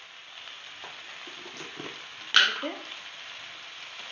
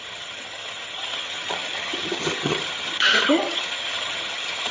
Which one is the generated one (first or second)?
second